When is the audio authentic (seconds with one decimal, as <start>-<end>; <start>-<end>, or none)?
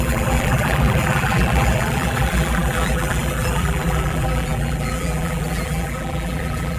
none